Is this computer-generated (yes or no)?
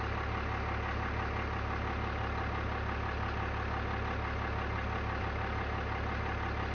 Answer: no